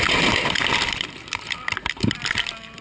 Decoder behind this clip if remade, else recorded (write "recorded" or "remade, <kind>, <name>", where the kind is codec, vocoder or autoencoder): recorded